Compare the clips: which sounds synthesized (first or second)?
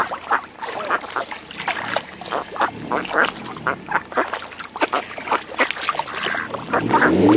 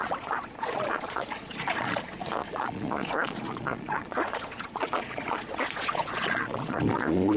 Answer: second